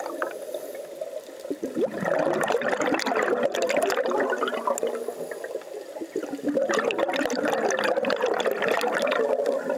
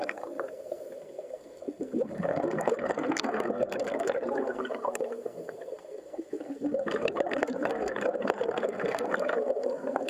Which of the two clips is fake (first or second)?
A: second